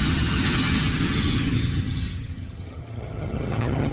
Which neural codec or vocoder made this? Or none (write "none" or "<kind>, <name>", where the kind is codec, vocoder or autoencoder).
vocoder, HiFi-GAN